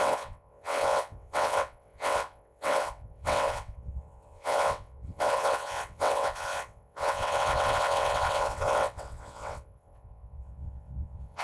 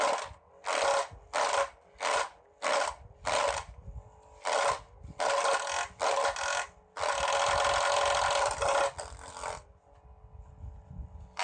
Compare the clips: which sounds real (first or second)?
second